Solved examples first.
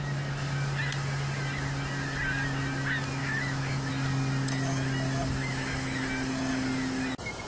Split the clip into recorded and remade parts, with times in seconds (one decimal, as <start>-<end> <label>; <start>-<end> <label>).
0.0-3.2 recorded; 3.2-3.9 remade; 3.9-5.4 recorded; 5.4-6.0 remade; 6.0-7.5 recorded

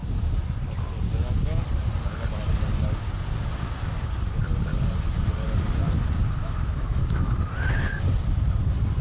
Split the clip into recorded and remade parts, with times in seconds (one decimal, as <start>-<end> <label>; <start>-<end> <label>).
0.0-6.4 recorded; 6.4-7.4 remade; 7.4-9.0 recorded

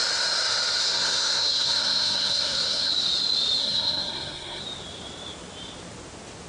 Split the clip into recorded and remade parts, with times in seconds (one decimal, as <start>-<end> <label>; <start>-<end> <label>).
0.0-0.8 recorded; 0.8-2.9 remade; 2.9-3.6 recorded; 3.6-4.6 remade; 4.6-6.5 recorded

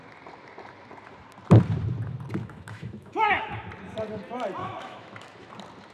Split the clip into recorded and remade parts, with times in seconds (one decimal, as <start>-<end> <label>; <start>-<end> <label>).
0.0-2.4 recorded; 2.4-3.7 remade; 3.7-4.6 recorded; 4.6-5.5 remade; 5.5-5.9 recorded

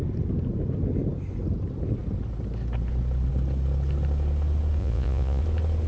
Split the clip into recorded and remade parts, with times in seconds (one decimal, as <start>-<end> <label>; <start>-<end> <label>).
0.0-4.8 recorded; 4.8-5.4 remade; 5.4-5.9 recorded